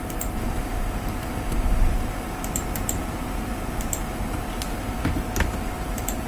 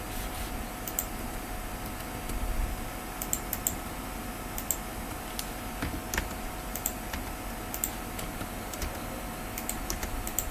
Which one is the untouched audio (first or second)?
second